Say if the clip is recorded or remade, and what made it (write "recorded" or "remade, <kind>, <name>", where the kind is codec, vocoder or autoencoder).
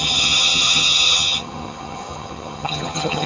remade, vocoder, HiFi-GAN